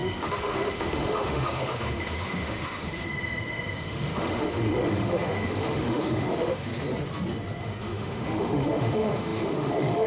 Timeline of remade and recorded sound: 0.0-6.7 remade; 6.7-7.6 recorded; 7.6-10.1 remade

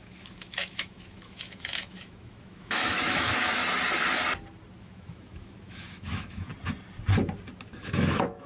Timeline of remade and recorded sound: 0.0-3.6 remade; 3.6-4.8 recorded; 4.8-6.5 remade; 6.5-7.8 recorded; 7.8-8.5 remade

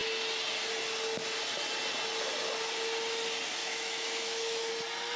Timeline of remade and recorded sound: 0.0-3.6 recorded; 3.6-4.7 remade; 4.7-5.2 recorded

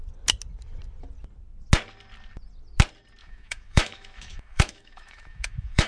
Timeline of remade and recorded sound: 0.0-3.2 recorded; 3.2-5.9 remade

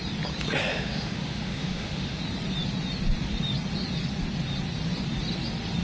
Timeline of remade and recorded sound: 0.0-0.7 recorded; 0.7-2.2 remade; 2.2-5.8 recorded

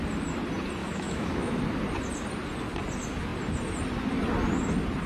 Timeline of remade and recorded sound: 0.0-0.8 recorded; 0.8-1.6 remade; 1.6-5.1 recorded

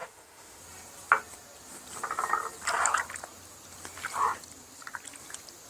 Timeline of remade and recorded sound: 0.0-0.6 remade; 0.6-5.7 recorded